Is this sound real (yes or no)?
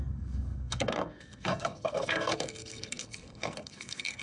no